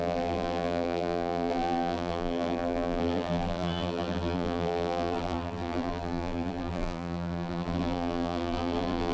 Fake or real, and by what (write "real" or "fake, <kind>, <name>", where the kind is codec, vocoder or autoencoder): fake, vocoder, BigVGAN v2